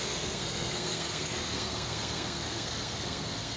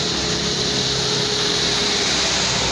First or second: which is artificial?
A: first